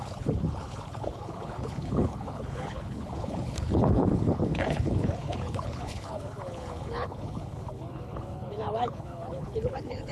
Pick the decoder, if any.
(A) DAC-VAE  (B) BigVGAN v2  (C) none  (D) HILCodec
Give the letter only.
D